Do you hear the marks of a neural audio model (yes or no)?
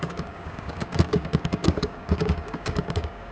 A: yes